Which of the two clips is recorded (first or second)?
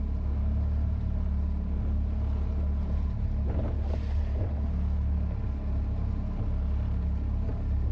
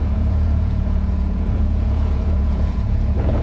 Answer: first